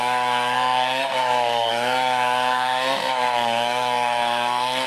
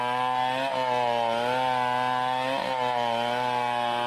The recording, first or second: second